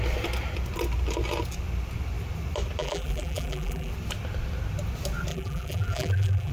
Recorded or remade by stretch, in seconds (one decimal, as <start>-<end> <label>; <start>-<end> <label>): 0.0-2.8 recorded; 2.8-3.9 remade; 3.9-5.3 recorded; 5.3-6.5 remade